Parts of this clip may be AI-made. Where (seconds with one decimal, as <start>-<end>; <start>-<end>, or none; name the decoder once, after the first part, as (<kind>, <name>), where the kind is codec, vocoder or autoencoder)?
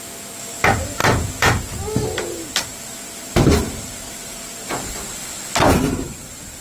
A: 1.0-1.6 (vocoder, BigVGAN v2); 2.7-4.9